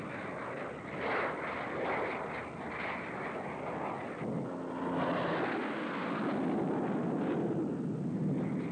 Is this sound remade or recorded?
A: recorded